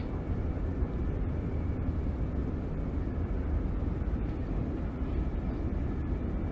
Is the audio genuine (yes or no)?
yes